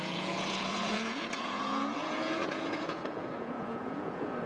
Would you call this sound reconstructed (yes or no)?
yes